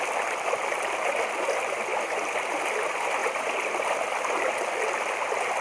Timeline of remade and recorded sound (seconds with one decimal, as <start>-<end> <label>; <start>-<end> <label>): 0.0-5.6 recorded

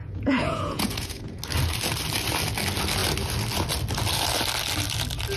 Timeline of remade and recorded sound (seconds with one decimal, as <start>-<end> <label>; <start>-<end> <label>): 0.0-1.4 remade; 1.4-5.4 recorded

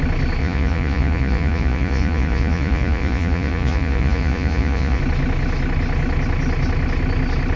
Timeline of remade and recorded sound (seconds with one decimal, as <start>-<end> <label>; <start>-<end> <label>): 0.0-0.4 recorded; 0.4-5.0 remade; 5.0-7.6 recorded

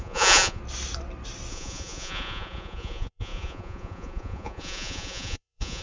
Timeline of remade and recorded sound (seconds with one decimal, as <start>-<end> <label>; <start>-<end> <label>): 0.0-0.6 remade; 0.6-1.5 recorded; 1.5-5.8 remade

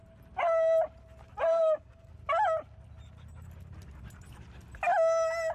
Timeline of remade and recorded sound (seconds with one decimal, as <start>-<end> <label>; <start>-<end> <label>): 0.0-1.5 recorded; 1.5-2.1 remade; 2.1-5.5 recorded

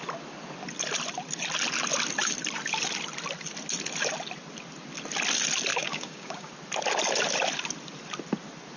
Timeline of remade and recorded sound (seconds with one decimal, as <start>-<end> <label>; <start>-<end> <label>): 0.0-5.7 recorded; 5.7-6.5 remade; 6.5-8.8 recorded